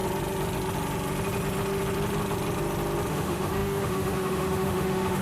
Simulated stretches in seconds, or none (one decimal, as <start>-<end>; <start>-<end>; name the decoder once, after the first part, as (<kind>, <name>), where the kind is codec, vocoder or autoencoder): 3.1-5.2 (autoencoder, DAC-VAE)